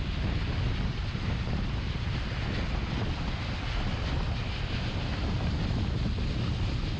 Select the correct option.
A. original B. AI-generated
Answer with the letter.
A